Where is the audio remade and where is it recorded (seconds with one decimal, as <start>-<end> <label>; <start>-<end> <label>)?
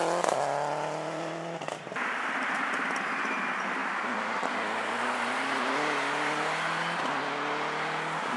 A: 0.0-8.4 recorded